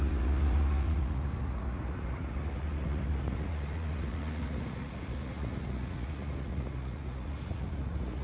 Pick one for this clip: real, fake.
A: fake